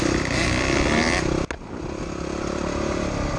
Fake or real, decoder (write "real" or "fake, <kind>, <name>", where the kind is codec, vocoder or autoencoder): real